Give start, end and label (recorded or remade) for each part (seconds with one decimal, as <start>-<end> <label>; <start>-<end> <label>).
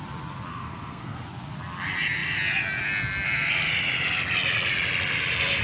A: 0.0-0.5 recorded; 0.5-1.2 remade; 1.2-5.6 recorded